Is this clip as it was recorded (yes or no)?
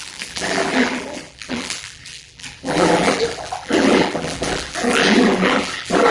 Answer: no